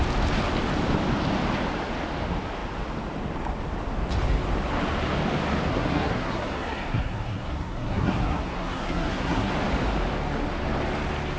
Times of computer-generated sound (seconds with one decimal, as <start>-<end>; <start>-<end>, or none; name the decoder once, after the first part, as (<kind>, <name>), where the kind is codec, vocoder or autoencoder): 5.7-9.5 (codec, SNAC)